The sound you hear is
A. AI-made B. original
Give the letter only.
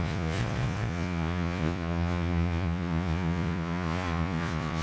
A